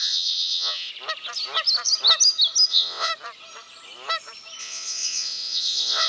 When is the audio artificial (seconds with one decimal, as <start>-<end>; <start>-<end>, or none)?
0.0-0.9; 2.7-3.1; 4.6-6.1